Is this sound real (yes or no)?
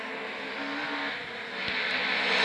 yes